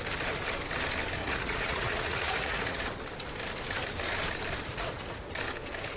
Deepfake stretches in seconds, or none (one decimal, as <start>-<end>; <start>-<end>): 1.2-2.8; 4.7-5.3

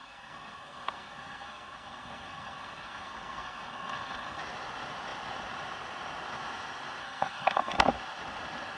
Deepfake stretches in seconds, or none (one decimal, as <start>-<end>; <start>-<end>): 0.0-4.4; 7.0-7.8

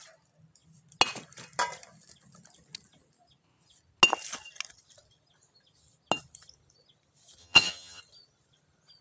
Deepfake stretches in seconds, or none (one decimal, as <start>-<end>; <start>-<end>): 7.4-8.0

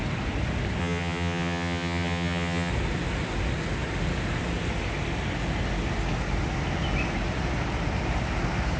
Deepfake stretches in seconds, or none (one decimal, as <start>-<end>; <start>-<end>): 0.8-2.7

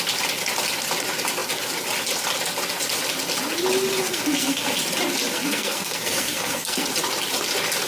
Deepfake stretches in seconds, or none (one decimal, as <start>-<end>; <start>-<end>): 4.0-4.8; 5.3-6.9

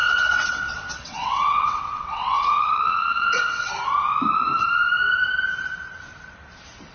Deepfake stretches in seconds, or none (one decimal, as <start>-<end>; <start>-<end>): 0.0-3.7

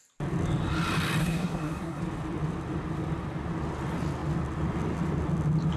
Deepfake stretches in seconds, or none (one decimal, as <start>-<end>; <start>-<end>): 1.2-2.0